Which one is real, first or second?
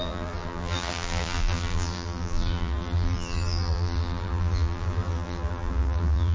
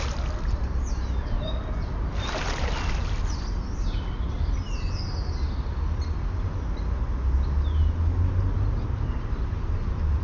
second